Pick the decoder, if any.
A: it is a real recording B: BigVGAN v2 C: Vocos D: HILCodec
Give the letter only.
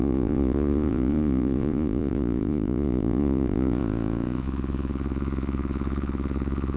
C